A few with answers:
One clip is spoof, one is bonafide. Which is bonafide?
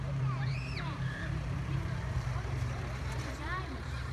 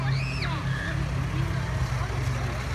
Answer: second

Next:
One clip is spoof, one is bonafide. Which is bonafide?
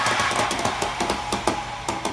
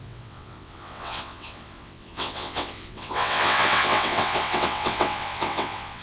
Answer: first